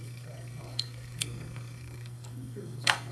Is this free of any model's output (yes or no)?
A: no